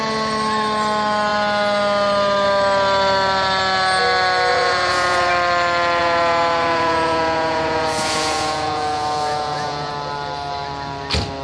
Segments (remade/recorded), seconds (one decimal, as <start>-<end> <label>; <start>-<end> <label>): 0.0-4.5 recorded; 4.5-5.3 remade; 5.3-6.0 recorded; 6.0-9.9 remade; 9.9-11.4 recorded